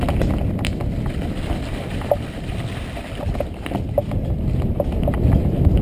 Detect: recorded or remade recorded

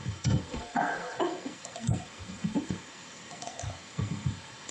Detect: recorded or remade remade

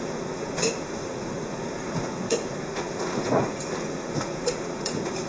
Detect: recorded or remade remade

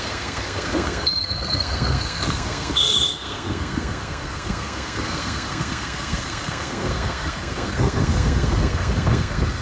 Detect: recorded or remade remade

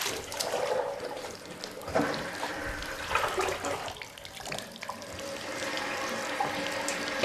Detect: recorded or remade recorded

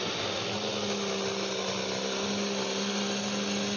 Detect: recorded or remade recorded